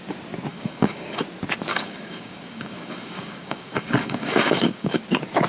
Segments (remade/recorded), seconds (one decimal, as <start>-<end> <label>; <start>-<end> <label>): 0.0-0.5 recorded; 0.5-1.2 remade; 1.2-1.7 recorded; 1.7-5.0 remade; 5.0-5.5 recorded